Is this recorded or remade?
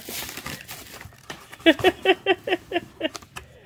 recorded